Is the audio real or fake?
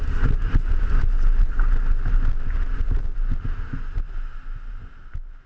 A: real